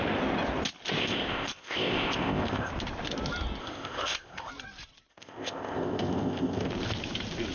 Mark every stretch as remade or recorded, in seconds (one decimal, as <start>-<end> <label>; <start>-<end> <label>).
0.0-1.0 recorded; 1.0-2.7 remade; 2.7-3.6 recorded; 3.6-4.5 remade; 4.5-5.1 recorded; 5.1-6.7 remade; 6.7-7.5 recorded

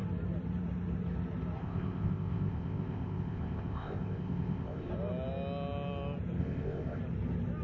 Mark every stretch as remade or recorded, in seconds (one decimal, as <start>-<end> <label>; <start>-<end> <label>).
0.0-1.6 recorded; 1.6-4.9 remade; 4.9-6.4 recorded; 6.4-7.0 remade; 7.0-7.6 recorded